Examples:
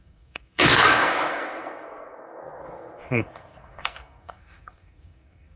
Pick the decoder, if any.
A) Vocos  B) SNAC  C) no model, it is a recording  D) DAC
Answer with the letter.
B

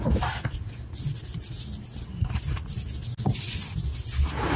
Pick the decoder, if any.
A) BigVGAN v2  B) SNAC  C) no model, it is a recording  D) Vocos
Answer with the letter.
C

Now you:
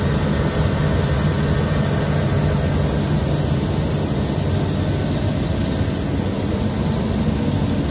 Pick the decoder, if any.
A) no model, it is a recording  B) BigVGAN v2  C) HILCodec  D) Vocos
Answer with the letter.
A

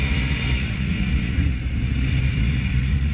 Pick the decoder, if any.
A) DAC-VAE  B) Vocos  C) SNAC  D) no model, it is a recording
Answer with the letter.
B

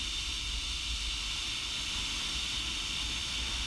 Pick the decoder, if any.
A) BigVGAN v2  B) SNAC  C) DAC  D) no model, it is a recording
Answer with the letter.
D